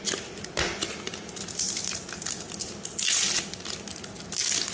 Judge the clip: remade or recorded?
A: recorded